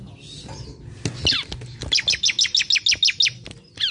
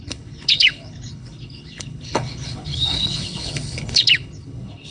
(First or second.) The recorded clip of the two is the first